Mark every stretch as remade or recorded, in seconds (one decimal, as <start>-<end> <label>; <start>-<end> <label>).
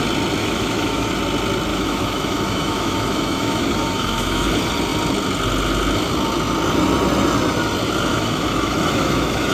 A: 0.0-0.4 recorded; 0.4-1.1 remade; 1.1-1.7 recorded; 1.7-4.5 remade; 4.5-8.1 recorded; 8.1-9.5 remade